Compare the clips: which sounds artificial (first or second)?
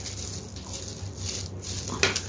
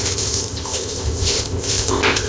second